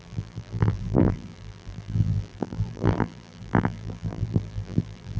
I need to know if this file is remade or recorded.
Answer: remade